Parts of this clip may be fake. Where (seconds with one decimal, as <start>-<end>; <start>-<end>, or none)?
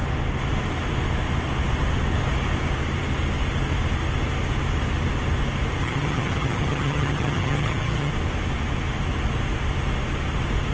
5.8-8.1